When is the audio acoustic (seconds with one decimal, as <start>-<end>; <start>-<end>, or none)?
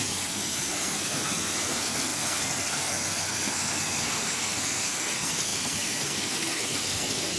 none